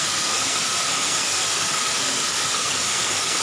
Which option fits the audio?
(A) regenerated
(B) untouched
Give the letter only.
A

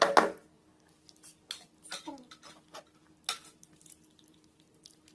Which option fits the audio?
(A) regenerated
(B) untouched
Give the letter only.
B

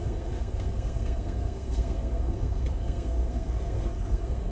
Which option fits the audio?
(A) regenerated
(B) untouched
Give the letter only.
A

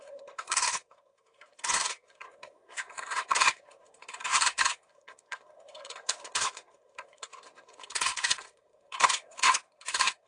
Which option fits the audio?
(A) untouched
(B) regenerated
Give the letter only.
B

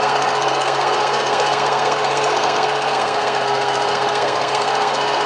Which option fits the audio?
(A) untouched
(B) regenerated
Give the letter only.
B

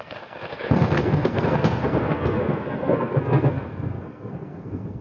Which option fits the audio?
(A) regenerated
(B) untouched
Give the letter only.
A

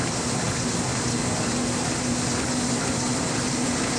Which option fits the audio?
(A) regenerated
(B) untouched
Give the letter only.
B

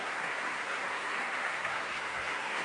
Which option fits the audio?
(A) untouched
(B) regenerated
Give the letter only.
B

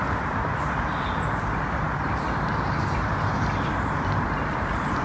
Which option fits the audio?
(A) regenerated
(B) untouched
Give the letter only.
B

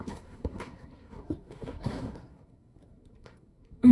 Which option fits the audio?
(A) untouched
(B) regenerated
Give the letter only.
B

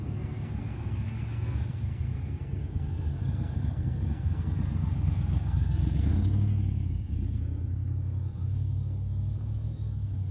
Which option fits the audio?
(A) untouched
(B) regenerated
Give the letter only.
B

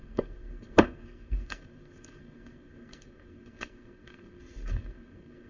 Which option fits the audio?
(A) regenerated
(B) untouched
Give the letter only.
A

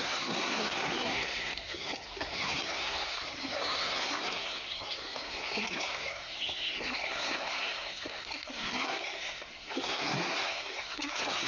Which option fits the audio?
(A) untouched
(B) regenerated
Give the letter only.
B